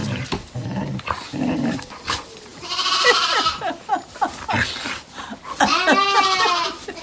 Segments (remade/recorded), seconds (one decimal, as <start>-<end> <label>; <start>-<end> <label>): 0.0-0.9 remade; 0.9-1.3 recorded; 1.3-1.9 remade; 1.9-7.0 recorded